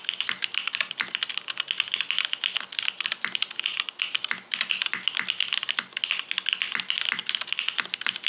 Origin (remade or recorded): recorded